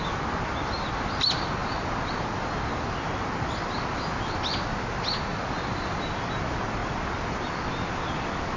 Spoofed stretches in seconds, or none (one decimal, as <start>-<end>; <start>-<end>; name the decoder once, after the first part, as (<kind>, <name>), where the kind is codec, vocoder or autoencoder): 5.3-5.9 (vocoder, BigVGAN v2)